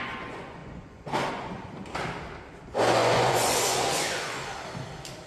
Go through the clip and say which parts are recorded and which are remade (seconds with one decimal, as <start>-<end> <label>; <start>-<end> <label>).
0.0-1.8 remade; 1.8-2.6 recorded; 2.6-4.4 remade; 4.4-5.3 recorded